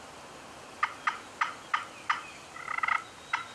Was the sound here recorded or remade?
recorded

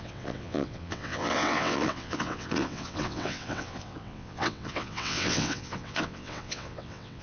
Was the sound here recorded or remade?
remade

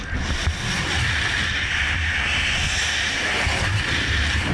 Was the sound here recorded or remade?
recorded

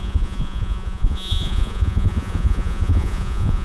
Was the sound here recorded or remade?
remade